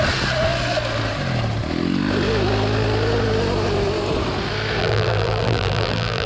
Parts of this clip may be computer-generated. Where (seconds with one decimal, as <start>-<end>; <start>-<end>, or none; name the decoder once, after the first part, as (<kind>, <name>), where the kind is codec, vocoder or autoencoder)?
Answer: 4.8-6.3 (vocoder, BigVGAN v2)